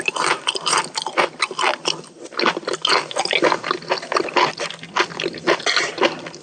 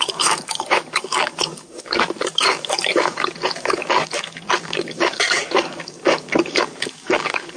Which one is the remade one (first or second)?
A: second